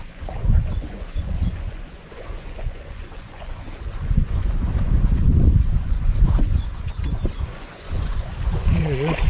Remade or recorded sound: remade